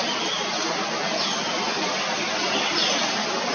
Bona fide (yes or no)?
yes